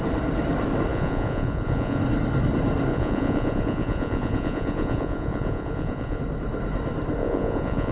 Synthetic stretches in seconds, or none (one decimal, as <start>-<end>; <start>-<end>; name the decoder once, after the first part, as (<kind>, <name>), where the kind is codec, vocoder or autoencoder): 0.9-2.0 (vocoder, Vocos); 2.9-6.2; 7.2-7.9